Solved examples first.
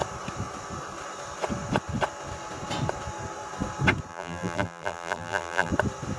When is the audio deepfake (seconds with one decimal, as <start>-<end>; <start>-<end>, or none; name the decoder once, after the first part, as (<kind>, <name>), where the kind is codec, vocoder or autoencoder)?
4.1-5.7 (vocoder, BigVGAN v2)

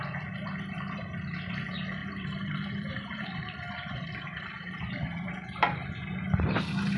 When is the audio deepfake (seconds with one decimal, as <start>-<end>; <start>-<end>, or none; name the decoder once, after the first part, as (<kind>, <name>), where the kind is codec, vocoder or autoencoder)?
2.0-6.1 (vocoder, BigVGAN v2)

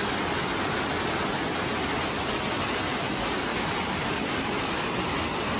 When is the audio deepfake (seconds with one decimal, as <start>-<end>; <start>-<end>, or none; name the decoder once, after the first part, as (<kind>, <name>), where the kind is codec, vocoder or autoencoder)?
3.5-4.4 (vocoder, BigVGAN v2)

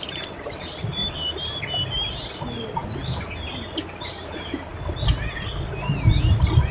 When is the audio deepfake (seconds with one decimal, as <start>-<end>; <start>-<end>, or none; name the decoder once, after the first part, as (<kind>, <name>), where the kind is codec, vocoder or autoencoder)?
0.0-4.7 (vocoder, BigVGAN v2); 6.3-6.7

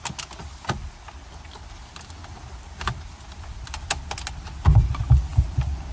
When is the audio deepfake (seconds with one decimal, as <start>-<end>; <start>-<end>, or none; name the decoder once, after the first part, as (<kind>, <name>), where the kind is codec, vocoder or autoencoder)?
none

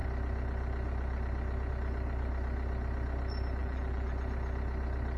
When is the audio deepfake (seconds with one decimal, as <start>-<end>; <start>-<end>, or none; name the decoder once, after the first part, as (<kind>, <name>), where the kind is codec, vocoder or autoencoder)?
3.6-4.1 (vocoder, BigVGAN v2)

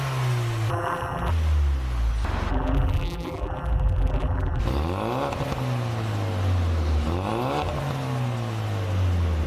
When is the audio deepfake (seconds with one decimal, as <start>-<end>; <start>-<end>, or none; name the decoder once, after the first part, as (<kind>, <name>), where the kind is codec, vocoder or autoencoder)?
0.7-1.3 (vocoder, BigVGAN v2); 2.5-4.6